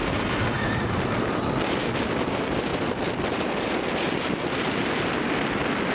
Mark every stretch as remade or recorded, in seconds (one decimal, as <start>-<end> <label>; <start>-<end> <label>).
0.0-5.9 remade